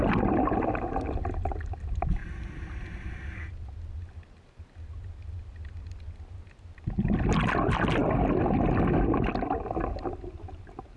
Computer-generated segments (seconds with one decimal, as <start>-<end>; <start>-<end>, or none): none